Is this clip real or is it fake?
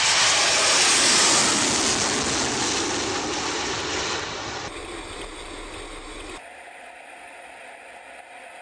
real